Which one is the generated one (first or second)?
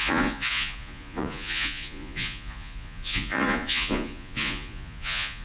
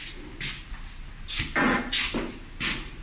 first